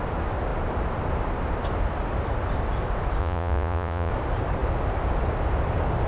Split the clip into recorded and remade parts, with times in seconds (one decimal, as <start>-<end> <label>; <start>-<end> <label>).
0.0-3.2 recorded; 3.2-4.1 remade; 4.1-6.1 recorded